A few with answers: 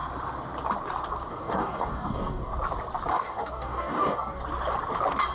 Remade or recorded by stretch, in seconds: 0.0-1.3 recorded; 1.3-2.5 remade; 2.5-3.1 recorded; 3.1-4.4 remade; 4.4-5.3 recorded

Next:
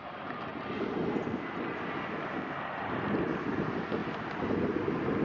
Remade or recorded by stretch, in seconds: 0.0-5.2 recorded

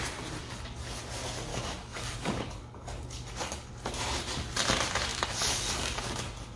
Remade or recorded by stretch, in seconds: 0.0-0.4 recorded; 0.4-1.0 remade; 1.0-1.5 recorded; 1.5-3.7 remade; 3.7-5.1 recorded; 5.1-6.1 remade; 6.1-6.6 recorded